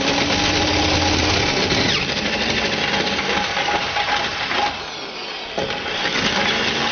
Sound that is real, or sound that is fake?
real